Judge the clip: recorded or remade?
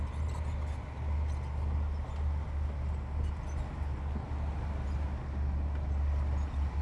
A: recorded